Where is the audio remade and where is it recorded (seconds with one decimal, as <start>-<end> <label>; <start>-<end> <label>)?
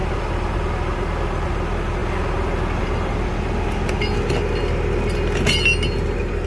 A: 0.0-0.7 remade; 0.7-6.5 recorded